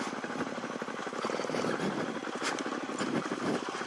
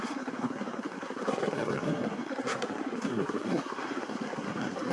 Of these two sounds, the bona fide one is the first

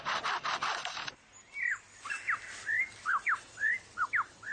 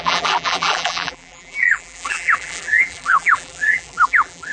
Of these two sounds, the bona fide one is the first